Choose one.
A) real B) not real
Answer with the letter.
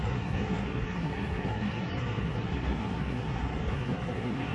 B